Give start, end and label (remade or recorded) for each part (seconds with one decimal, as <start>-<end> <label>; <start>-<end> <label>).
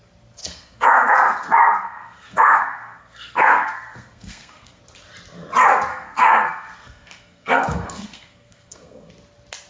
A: 0.0-0.4 recorded; 0.4-4.8 remade; 4.8-5.9 recorded; 5.9-9.1 remade; 9.1-9.7 recorded